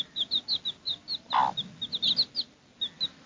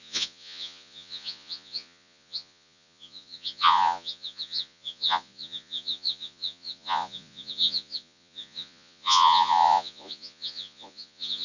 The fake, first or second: second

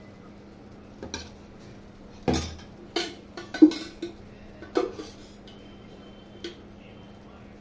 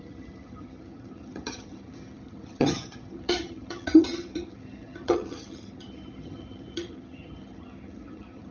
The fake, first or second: second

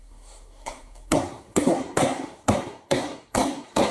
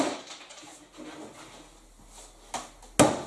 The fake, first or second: first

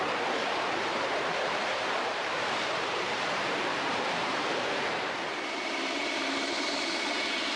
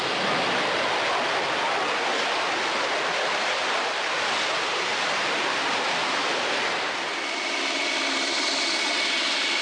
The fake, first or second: first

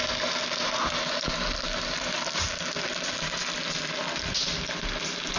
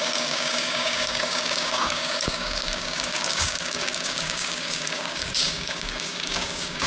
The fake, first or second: second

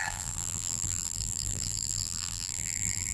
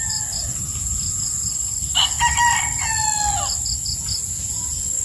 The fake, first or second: first